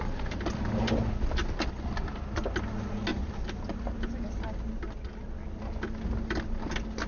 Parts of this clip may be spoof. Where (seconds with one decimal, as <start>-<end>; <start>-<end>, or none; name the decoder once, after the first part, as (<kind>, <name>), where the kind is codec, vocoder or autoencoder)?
none